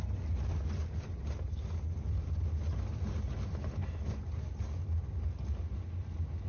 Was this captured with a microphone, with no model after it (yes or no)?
yes